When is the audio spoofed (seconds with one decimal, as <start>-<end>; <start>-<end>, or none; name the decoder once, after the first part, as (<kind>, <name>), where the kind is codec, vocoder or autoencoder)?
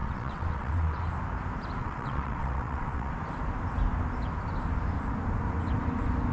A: 0.0-1.0 (vocoder, WaveNeXt); 1.8-3.1